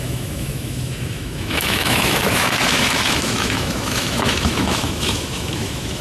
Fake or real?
fake